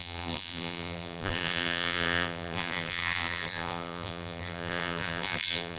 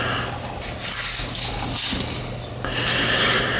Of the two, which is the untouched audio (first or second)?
second